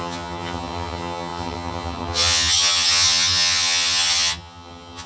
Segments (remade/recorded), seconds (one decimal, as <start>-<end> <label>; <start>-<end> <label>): 0.0-5.1 remade